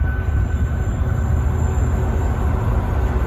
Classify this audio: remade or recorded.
recorded